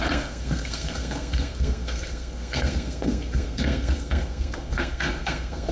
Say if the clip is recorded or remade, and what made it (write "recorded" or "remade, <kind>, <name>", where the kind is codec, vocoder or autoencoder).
remade, codec, SNAC